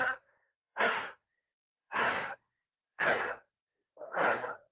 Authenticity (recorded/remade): remade